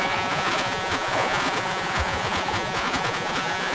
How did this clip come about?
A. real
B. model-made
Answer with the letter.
B